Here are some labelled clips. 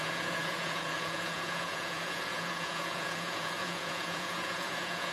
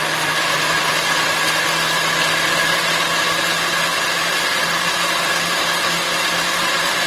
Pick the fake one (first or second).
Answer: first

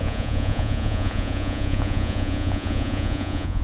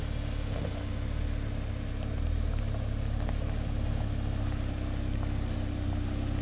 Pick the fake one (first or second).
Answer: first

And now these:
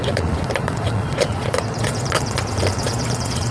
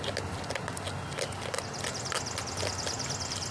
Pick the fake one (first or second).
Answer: first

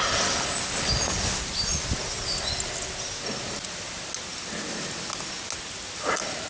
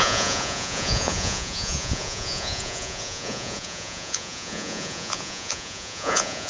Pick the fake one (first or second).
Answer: second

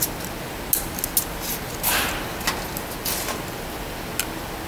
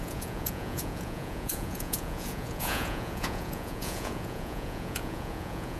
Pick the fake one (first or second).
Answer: second